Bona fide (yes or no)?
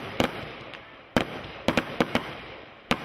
no